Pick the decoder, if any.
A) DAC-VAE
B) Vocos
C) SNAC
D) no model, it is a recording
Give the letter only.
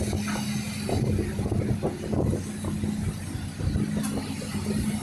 D